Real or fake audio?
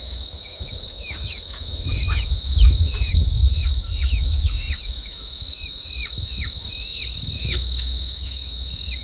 fake